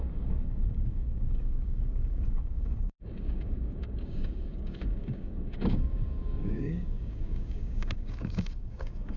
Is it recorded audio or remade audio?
remade